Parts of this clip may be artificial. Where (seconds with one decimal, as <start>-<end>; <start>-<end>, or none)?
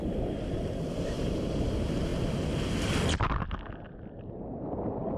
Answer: 0.0-1.3